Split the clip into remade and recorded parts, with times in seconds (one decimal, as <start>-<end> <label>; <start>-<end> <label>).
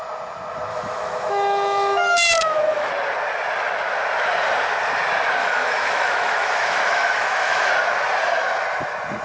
0.0-0.7 recorded; 0.7-2.9 remade; 2.9-5.4 recorded; 5.4-7.7 remade; 7.7-9.2 recorded